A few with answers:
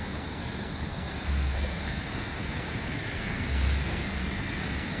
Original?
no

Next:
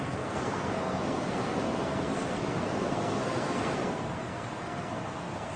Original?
no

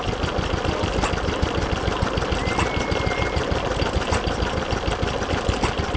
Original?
yes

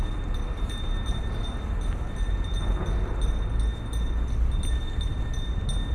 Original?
yes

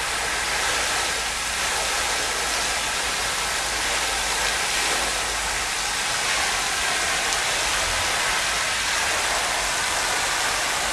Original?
yes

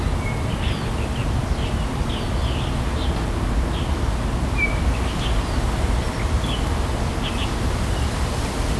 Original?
yes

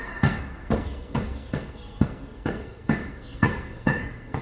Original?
no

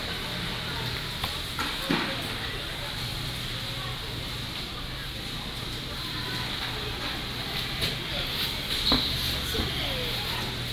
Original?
yes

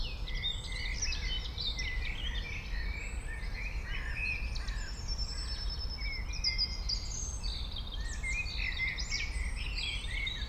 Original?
yes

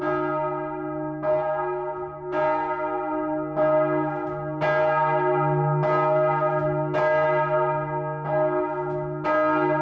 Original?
yes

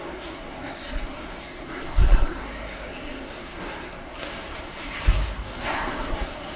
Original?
no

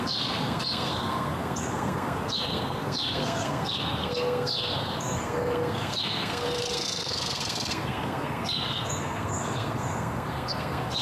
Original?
no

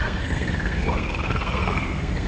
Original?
no